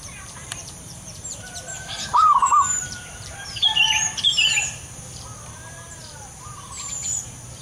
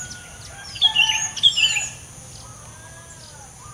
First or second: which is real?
second